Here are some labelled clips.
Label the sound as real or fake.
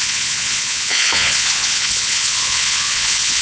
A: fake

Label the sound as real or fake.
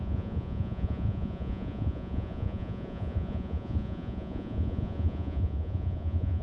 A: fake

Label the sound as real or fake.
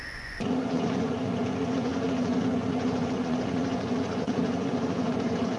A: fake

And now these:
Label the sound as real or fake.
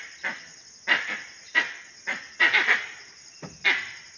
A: real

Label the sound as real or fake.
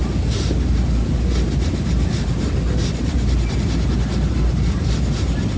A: real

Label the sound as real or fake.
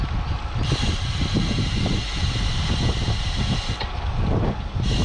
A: real